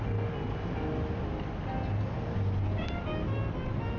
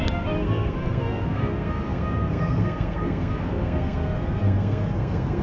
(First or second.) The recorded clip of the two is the first